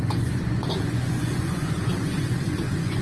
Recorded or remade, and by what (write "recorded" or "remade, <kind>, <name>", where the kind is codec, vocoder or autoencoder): remade, vocoder, Vocos